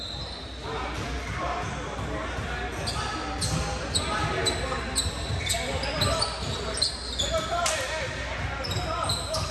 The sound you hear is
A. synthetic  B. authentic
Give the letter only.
B